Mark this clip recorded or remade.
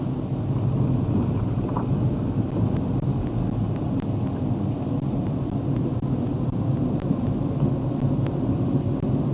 recorded